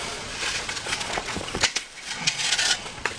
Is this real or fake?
fake